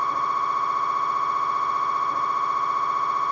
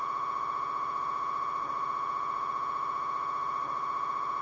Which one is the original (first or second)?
first